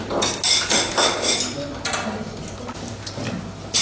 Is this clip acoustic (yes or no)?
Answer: yes